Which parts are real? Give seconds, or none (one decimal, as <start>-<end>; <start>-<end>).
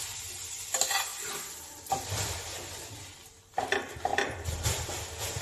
0.0-5.4